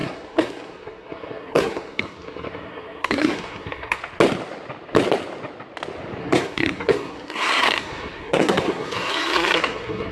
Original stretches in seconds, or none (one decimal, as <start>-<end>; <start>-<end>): 4.0-6.2